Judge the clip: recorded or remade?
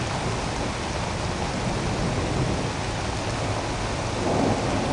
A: recorded